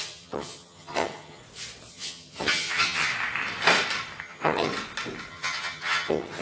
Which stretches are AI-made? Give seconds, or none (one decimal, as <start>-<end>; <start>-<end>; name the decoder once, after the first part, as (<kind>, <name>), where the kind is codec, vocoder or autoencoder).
0.0-1.4 (vocoder, HiFi-GAN); 1.9-3.1; 4.2-4.7; 5.3-6.4